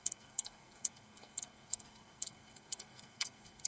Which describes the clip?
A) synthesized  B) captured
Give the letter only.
A